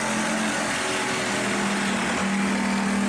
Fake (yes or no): no